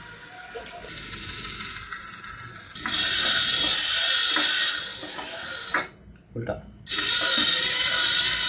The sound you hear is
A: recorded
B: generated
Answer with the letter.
A